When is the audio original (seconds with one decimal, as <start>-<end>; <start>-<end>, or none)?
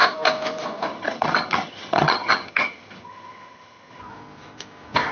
0.0-0.9; 4.0-5.1